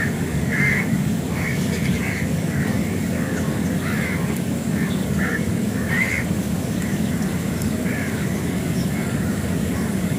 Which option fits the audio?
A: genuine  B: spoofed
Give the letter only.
B